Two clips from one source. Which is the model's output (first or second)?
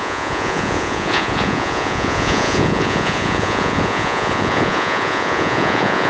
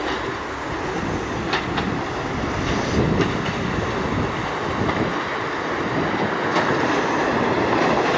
first